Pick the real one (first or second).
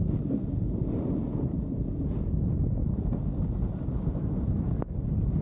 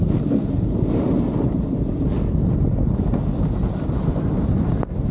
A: second